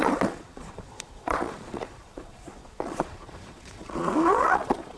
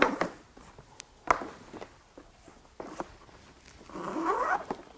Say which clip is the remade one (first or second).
first